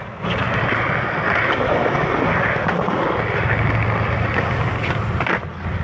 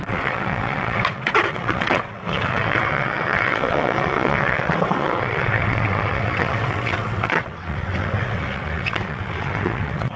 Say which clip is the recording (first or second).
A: first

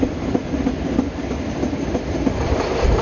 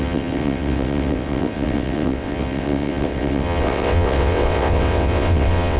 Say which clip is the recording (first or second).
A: first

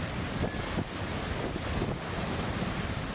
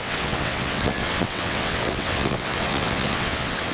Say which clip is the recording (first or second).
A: first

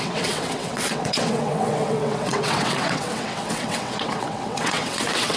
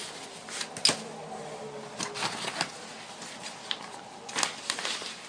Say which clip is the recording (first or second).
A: second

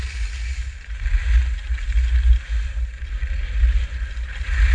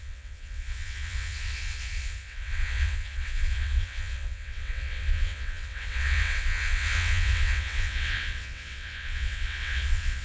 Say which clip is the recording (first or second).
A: first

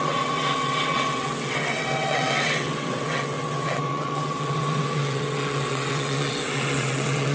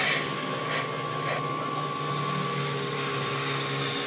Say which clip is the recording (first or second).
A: second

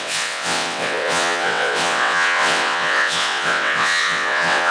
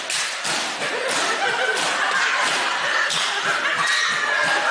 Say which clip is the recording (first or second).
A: second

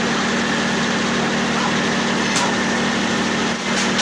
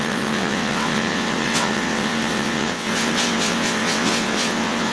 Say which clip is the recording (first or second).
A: first